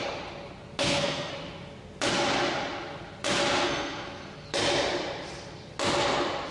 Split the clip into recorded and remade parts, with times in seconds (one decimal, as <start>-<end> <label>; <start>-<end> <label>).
0.0-0.9 recorded; 0.9-1.3 remade; 1.3-3.5 recorded; 3.5-4.2 remade; 4.2-6.5 recorded